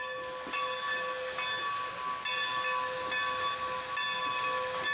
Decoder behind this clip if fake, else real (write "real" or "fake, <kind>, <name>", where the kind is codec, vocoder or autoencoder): real